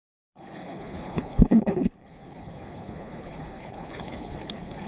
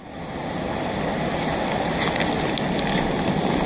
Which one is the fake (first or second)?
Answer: first